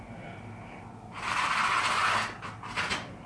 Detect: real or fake real